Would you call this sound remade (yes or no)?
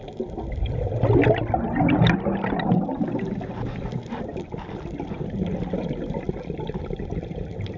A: no